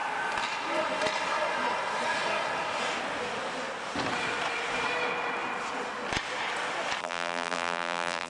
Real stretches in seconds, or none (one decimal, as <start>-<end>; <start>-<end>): 0.0-7.0